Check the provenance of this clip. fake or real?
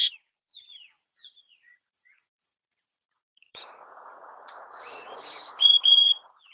fake